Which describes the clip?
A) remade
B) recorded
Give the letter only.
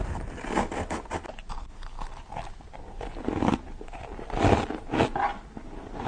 B